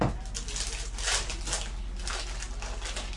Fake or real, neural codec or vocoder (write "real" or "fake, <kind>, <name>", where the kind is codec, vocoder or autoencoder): real